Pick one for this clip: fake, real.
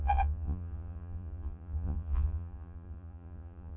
fake